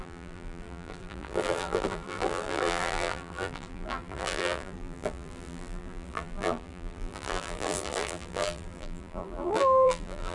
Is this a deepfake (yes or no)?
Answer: yes